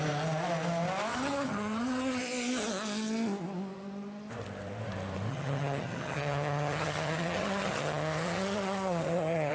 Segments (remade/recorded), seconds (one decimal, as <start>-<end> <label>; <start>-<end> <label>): 0.0-1.1 recorded; 1.1-2.2 remade; 2.2-5.3 recorded; 5.3-9.5 remade